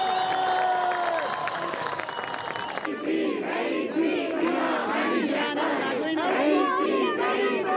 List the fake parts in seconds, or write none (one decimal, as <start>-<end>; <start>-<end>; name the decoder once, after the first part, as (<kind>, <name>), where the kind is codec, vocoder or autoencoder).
1.4-2.1 (codec, DAC)